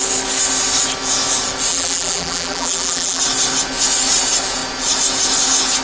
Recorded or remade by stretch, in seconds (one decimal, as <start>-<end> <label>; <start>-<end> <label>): 0.0-1.7 recorded; 1.7-3.2 remade; 3.2-5.8 recorded